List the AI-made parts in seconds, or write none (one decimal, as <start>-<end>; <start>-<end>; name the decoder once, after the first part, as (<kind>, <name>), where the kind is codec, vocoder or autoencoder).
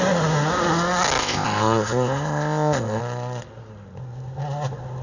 1.2-3.0 (codec, ZipCodec)